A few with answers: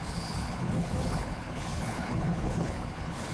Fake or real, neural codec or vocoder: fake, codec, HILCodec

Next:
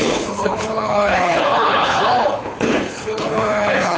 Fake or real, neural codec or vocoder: fake, codec, HILCodec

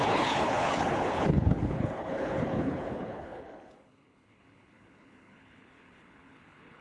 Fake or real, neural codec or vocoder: fake, codec, HILCodec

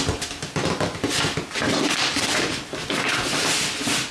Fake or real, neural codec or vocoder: real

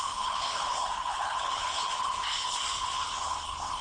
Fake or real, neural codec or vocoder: fake, codec, HILCodec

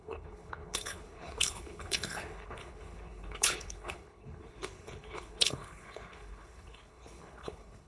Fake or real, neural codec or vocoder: fake, codec, HILCodec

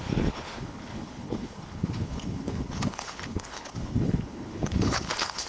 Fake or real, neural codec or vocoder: fake, codec, HILCodec